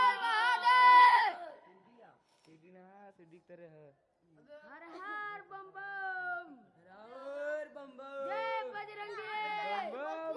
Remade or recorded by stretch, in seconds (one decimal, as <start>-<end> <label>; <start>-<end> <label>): 0.0-1.0 recorded; 1.0-3.1 remade; 3.1-10.4 recorded